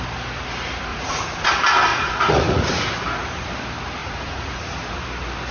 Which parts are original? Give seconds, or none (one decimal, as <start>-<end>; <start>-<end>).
0.0-0.9; 1.5-1.9; 2.9-4.0; 4.7-5.5